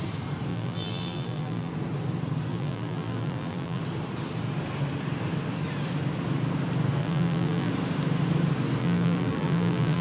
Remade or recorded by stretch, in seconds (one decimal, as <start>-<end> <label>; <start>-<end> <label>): 0.0-0.5 recorded; 0.5-1.7 remade; 1.7-2.5 recorded; 2.5-3.8 remade; 3.8-7.0 recorded; 7.0-7.7 remade; 7.7-8.8 recorded; 8.8-10.0 remade